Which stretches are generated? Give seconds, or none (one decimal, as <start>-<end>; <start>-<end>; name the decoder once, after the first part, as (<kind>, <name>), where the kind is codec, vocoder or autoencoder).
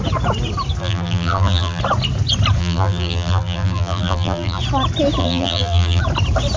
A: 0.8-1.8 (vocoder, BigVGAN v2); 2.6-4.6; 5.2-6.0